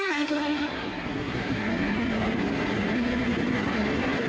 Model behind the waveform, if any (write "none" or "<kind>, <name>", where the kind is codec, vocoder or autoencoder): codec, SNAC